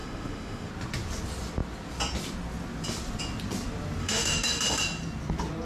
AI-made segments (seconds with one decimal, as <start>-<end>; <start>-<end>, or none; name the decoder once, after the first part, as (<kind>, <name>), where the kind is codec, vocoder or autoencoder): 0.0-0.7 (autoencoder, DAC-VAE); 4.0-4.8